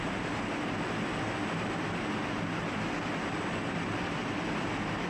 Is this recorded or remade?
recorded